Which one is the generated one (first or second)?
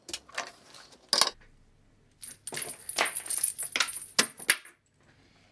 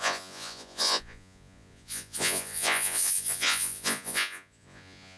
second